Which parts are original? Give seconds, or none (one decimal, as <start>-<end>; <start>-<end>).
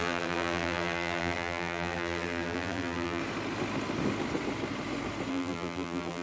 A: 3.2-5.3